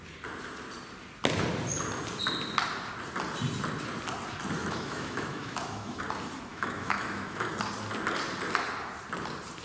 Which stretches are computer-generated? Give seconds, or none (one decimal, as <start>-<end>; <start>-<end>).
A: 4.6-6.0; 6.5-7.5